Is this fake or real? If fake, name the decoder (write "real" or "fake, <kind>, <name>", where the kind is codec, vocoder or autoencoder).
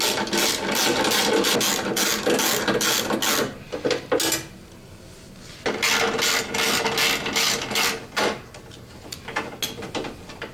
real